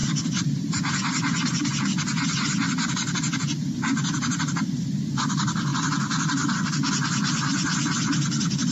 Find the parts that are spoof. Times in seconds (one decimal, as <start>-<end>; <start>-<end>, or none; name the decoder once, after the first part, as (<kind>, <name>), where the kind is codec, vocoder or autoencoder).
none